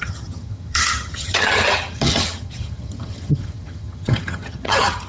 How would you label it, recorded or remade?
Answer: remade